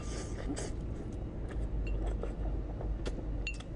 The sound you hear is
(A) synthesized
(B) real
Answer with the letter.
B